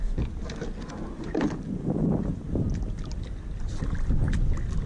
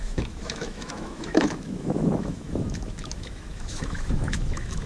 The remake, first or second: second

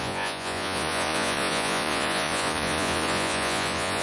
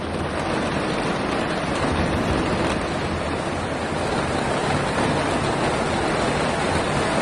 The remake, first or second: first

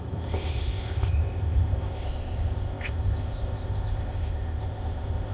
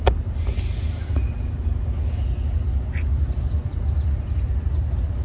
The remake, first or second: first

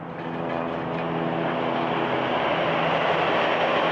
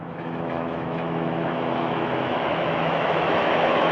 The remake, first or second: second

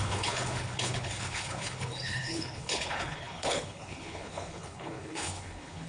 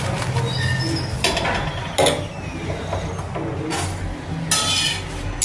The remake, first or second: first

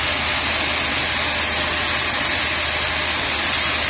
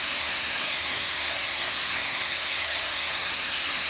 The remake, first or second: second